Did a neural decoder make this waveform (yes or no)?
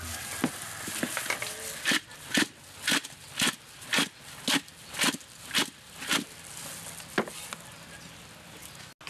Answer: no